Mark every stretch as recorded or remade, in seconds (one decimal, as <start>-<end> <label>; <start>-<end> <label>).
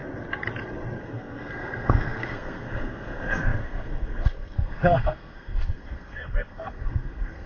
0.0-1.0 recorded; 1.0-7.5 remade